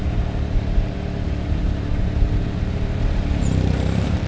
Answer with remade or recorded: remade